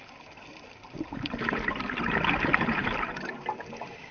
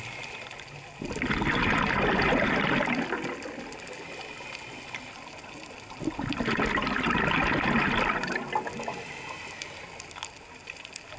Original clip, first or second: second